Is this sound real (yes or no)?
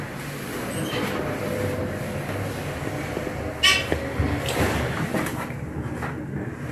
yes